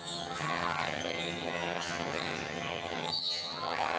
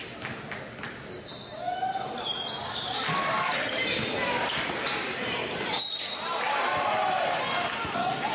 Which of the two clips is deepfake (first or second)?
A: first